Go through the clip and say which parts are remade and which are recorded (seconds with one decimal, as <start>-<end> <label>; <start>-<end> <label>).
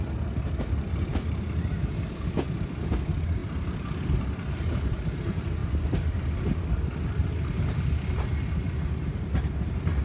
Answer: 0.0-10.0 recorded